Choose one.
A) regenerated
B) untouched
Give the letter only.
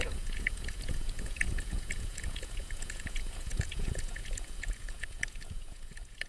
A